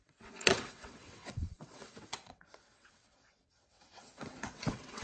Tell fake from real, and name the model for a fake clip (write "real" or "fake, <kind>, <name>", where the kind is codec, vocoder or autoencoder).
fake, vocoder, WaveNeXt